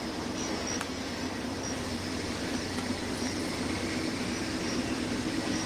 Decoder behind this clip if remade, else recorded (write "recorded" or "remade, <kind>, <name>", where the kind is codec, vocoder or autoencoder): recorded